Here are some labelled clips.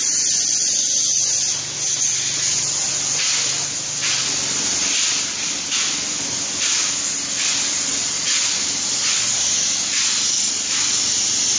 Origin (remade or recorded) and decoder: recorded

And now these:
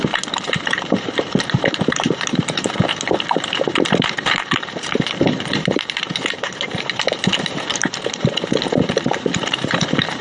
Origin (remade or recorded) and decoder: remade, vocoder, BigVGAN v2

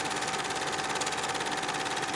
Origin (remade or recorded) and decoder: recorded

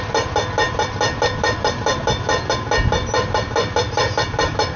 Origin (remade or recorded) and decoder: recorded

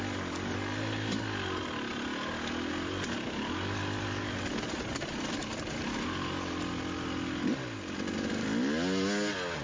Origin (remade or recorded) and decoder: recorded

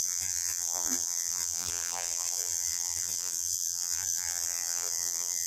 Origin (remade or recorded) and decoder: remade, vocoder, BigVGAN v2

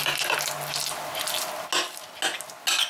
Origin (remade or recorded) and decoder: recorded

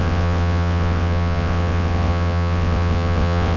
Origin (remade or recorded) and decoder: remade, vocoder, WaveNeXt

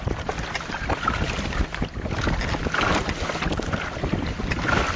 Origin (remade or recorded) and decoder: recorded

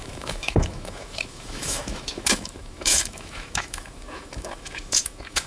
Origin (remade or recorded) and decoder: remade, autoencoder, DAC-VAE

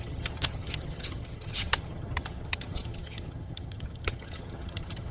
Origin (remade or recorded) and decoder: remade, vocoder, HiFi-GAN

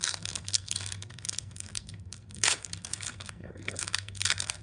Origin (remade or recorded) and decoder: remade, codec, SNAC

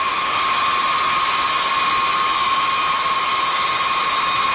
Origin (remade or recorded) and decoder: recorded